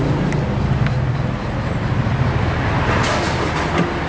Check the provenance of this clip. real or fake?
real